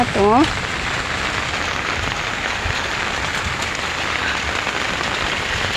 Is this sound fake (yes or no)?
no